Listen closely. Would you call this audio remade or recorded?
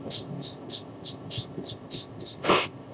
remade